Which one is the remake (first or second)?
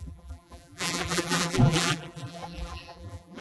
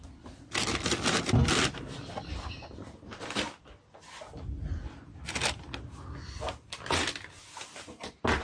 first